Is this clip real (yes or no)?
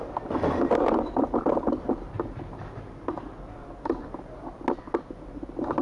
yes